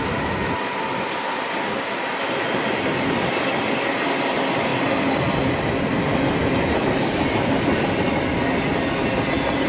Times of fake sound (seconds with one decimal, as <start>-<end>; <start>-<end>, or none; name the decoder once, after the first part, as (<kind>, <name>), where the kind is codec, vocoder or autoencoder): none

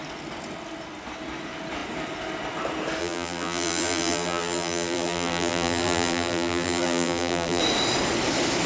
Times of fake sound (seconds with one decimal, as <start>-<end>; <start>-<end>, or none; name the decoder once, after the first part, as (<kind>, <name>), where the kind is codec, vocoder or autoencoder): 3.0-7.6 (vocoder, BigVGAN v2)

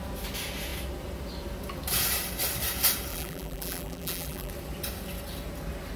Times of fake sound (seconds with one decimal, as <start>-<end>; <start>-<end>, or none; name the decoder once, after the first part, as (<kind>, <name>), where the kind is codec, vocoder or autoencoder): 3.1-4.5 (vocoder, BigVGAN v2)

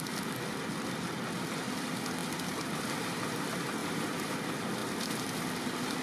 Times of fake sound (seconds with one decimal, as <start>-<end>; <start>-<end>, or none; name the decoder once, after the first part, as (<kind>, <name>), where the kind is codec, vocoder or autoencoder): 3.8-4.3 (vocoder, BigVGAN v2)

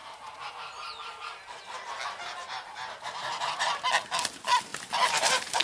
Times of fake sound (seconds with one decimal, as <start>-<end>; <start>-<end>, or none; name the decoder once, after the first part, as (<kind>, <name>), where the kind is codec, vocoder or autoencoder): 2.4-3.9 (vocoder, BigVGAN v2); 4.7-5.6

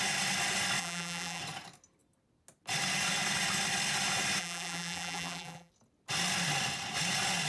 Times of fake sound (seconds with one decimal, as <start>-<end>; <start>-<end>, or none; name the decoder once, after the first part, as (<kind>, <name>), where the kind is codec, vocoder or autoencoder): 0.8-1.4 (vocoder, BigVGAN v2); 4.4-5.7